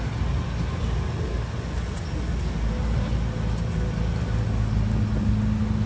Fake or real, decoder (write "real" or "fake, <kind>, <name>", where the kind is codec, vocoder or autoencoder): real